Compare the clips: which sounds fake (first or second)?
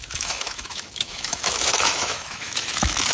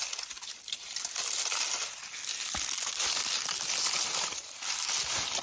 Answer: first